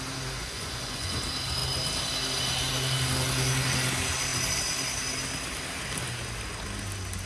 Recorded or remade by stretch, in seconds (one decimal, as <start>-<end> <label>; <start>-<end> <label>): 0.0-0.4 recorded; 0.4-1.2 remade; 1.2-7.3 recorded